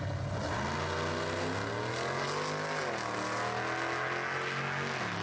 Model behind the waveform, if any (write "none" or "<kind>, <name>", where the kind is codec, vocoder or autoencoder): none